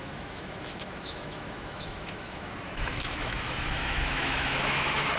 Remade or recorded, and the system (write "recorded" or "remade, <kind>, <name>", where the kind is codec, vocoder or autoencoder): remade, autoencoder, DAC-VAE